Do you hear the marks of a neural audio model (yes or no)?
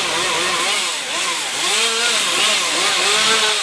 no